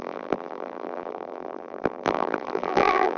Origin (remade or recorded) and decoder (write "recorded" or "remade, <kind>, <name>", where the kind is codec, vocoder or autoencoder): remade, vocoder, BigVGAN v2